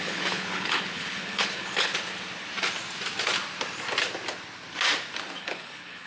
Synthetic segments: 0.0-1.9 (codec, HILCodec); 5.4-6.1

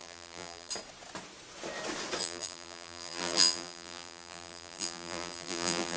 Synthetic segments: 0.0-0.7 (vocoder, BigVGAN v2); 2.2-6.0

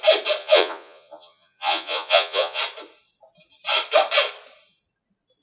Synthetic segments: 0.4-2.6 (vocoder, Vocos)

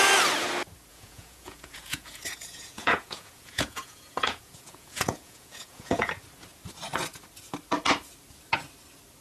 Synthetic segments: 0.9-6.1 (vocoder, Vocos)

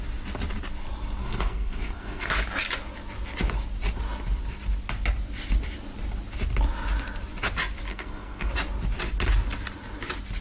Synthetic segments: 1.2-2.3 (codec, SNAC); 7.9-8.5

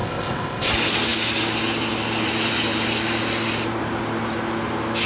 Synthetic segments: 0.0-0.7 (codec, ZipCodec)

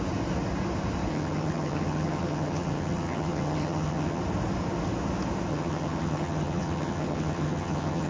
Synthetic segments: 1.1-4.2 (vocoder, HiFi-GAN); 5.5-8.1

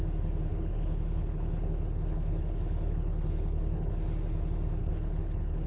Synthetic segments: 0.5-3.9 (codec, HILCodec); 4.8-5.7